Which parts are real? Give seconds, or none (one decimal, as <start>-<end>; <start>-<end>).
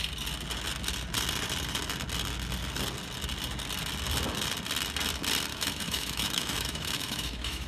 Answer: 0.0-5.5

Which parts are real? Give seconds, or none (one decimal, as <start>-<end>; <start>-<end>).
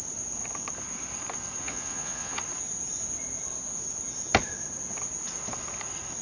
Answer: 0.0-1.6; 2.4-6.2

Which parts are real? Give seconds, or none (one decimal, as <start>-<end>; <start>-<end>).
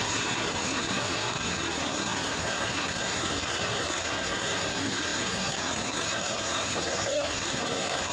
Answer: none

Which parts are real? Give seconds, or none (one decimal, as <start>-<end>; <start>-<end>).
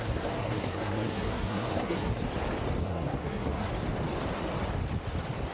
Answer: 2.2-2.8; 3.7-5.5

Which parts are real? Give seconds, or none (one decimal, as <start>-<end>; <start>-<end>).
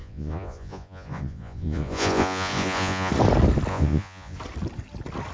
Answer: 3.1-3.7; 4.4-5.3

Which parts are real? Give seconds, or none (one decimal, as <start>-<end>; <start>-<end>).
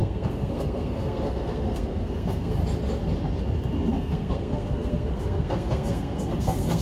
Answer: 2.6-3.9